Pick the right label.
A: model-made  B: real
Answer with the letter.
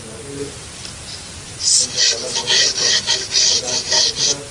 B